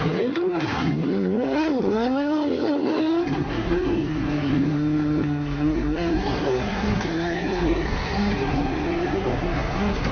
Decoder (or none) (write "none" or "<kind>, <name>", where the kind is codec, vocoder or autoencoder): codec, SNAC